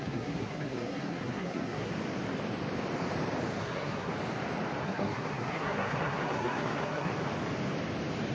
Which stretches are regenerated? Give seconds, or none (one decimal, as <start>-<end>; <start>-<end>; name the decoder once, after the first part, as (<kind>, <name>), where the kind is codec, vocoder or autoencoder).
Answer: 0.0-1.9 (codec, SNAC); 3.6-4.1; 4.8-7.1